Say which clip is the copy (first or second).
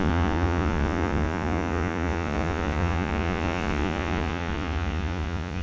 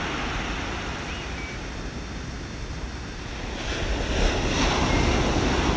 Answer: first